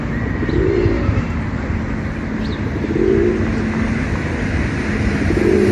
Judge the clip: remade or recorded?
recorded